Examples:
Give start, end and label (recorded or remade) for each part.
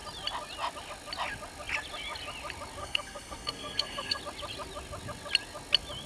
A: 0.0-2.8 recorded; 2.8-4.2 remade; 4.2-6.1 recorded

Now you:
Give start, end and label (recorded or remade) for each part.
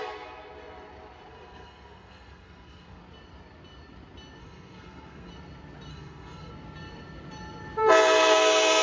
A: 0.0-1.3 recorded; 1.3-3.0 remade; 3.0-4.4 recorded; 4.4-5.3 remade; 5.3-5.9 recorded; 5.9-6.5 remade; 6.5-8.8 recorded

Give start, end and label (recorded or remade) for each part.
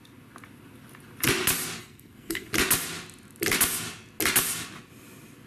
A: 0.0-1.8 recorded; 1.8-2.5 remade; 2.5-5.5 recorded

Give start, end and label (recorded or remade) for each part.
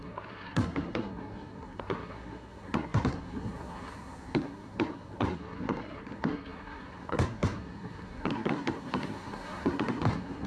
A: 0.0-10.5 remade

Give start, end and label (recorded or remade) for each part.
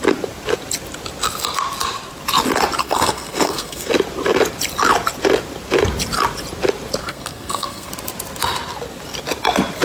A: 0.0-2.8 recorded; 2.8-3.9 remade; 3.9-7.0 recorded; 7.0-7.9 remade; 7.9-9.8 recorded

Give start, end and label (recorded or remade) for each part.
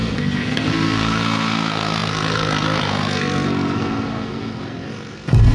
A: 0.0-5.5 remade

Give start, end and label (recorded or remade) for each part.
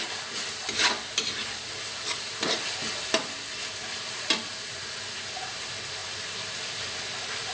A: 0.0-7.5 recorded